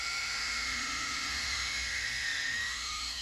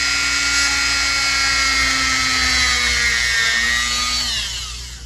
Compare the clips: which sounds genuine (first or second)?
second